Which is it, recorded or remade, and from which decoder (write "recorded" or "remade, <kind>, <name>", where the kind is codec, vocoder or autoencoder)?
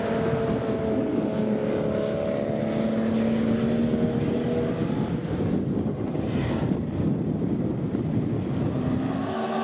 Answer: recorded